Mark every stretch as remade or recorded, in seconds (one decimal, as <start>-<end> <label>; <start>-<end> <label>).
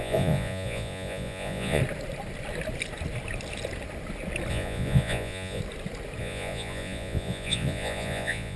0.0-1.8 remade; 1.8-4.5 recorded; 4.5-5.6 remade; 5.6-6.2 recorded; 6.2-8.6 remade